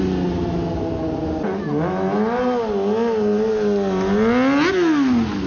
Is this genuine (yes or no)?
yes